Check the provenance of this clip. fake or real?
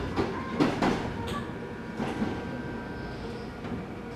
real